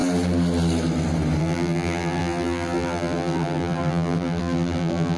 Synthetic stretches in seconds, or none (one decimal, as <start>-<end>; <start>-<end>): 1.4-5.2